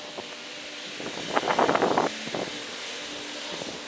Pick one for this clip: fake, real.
real